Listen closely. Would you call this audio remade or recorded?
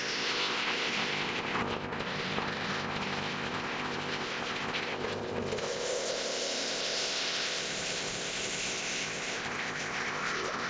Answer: remade